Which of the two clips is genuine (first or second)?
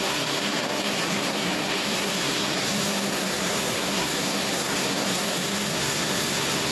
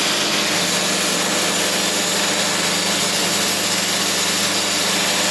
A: second